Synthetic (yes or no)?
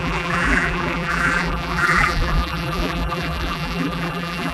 yes